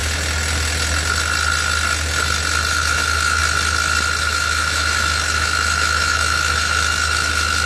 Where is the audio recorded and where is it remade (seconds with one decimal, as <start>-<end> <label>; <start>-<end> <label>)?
0.0-2.7 recorded; 2.7-3.4 remade; 3.4-4.2 recorded; 4.2-7.7 remade